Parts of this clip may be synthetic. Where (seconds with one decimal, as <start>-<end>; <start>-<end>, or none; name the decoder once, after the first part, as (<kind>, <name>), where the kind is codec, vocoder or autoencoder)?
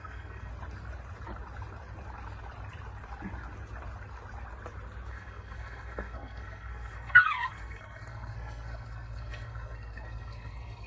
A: 0.0-0.5 (codec, SNAC); 5.1-10.9